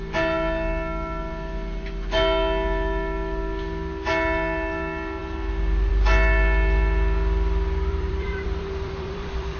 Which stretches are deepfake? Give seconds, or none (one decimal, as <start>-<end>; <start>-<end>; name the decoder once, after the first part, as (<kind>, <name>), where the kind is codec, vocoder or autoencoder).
7.9-9.6 (vocoder, BigVGAN v2)

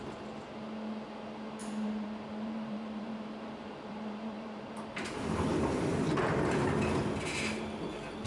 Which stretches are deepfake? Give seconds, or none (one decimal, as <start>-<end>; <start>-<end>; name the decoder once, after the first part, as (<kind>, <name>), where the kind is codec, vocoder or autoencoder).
1.6-4.7 (vocoder, BigVGAN v2); 5.5-6.2

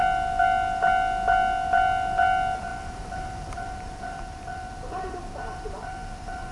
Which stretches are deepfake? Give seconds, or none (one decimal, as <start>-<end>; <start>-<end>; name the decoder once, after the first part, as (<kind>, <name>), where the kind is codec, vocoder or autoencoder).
2.7-6.5 (vocoder, BigVGAN v2)

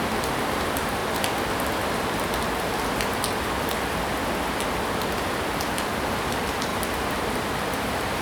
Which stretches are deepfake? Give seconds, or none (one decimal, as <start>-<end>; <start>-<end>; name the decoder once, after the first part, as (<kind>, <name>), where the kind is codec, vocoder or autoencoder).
0.0-1.0 (vocoder, BigVGAN v2); 5.2-6.7; 7.5-8.2